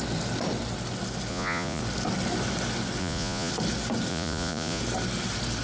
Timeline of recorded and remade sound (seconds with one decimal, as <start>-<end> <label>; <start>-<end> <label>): 0.0-1.3 recorded; 1.3-1.8 remade; 1.8-3.0 recorded; 3.0-3.5 remade; 3.5-4.1 recorded; 4.1-4.8 remade; 4.8-5.6 recorded